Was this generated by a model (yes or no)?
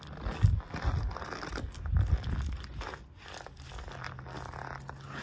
no